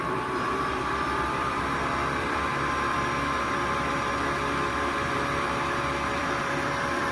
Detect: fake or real fake